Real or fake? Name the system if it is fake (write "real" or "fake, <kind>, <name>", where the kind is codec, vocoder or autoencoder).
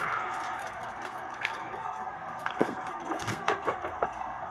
fake, codec, SNAC